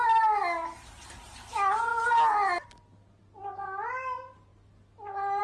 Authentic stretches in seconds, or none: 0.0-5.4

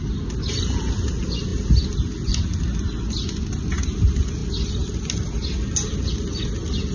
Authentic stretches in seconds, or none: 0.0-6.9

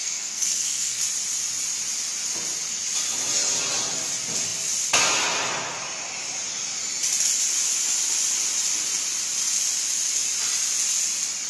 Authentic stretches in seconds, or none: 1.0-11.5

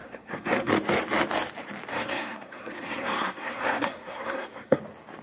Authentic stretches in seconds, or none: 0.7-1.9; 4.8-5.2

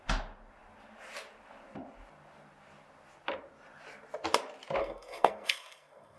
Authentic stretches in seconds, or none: 0.0-4.8